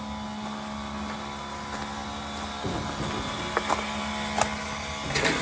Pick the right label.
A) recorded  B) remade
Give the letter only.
A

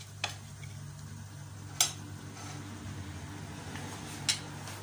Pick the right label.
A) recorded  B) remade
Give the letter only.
A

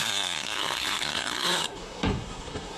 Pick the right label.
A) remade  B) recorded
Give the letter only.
A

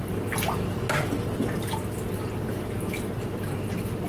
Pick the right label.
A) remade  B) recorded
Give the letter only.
B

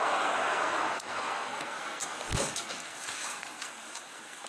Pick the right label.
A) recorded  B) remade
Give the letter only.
B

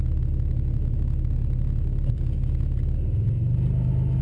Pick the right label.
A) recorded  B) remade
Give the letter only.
A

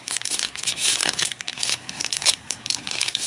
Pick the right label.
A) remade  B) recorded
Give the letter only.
A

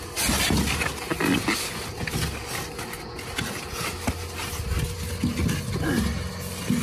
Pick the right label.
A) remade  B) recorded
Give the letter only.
B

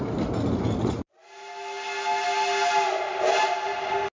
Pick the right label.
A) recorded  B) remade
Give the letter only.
A